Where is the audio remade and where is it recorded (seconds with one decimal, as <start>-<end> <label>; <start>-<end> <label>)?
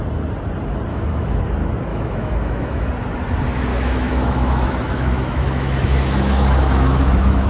0.0-0.9 recorded; 0.9-1.4 remade; 1.4-1.9 recorded; 1.9-2.9 remade; 2.9-3.7 recorded; 3.7-7.5 remade